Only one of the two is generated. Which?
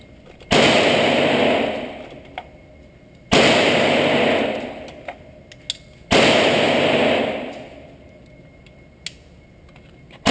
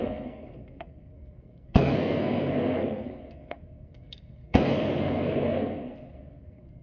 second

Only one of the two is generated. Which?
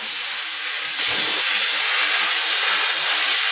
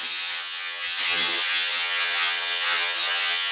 second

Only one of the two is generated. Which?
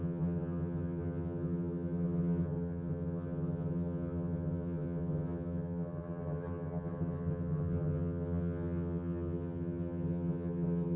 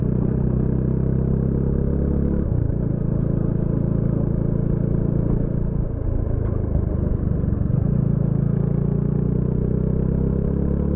first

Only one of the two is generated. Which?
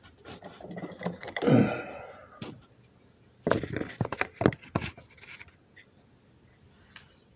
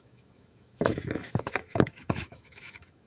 second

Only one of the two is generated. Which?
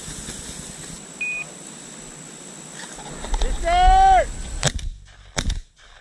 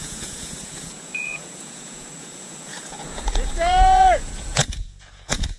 second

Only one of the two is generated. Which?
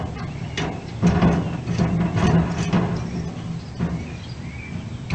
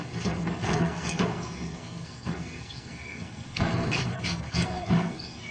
second